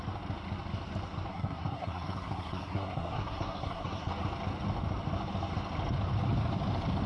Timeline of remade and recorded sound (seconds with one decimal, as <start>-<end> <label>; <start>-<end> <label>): 0.0-1.3 recorded; 1.3-4.1 remade; 4.1-7.1 recorded